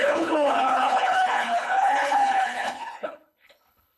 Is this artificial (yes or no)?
yes